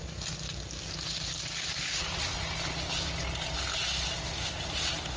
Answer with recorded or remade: recorded